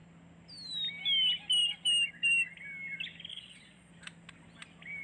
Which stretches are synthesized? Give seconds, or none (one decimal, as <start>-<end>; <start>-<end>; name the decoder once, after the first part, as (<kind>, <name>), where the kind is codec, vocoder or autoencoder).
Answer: 3.3-3.9 (vocoder, Vocos)